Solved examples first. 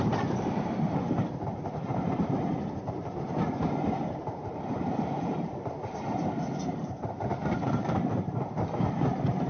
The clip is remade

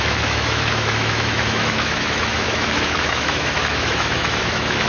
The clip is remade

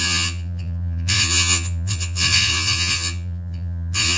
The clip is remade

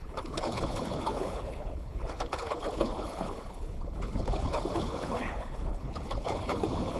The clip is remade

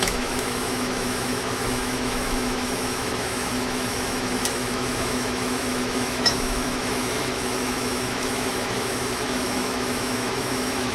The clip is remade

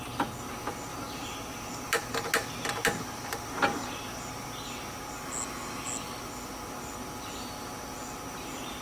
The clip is recorded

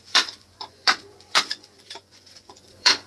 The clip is remade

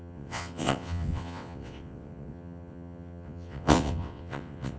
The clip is remade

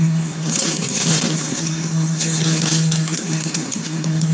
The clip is remade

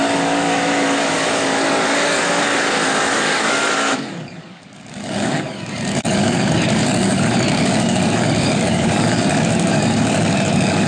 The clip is remade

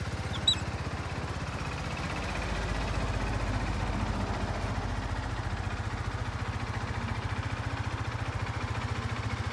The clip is recorded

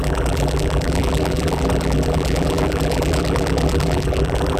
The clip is remade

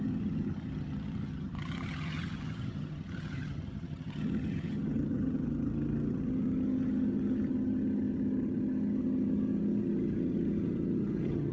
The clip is remade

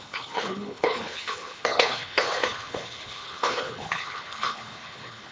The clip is remade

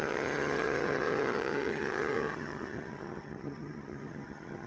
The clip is remade